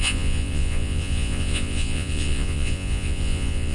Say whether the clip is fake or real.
fake